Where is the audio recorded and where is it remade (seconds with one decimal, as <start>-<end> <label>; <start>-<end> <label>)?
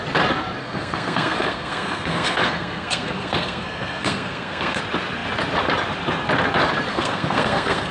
0.0-0.6 recorded; 0.6-4.8 remade; 4.8-6.9 recorded; 6.9-7.9 remade